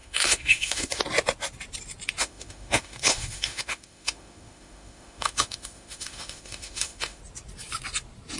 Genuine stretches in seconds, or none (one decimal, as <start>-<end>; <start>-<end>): 1.0-2.2; 7.2-8.4